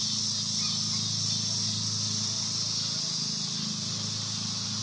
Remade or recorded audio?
recorded